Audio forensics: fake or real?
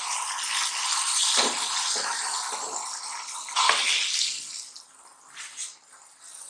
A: real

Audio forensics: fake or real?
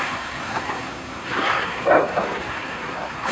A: fake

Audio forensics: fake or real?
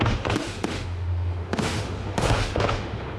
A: fake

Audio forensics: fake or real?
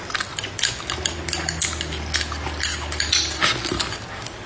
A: real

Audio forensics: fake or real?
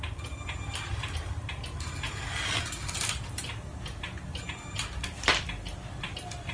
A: real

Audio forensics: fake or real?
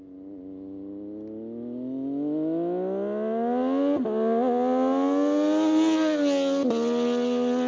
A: real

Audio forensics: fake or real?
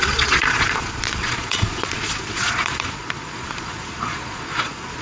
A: fake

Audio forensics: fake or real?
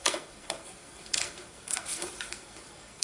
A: fake